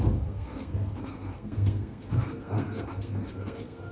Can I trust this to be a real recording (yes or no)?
no